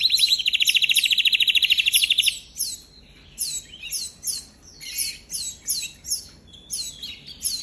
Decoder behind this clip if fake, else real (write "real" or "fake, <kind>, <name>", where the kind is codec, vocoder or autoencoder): real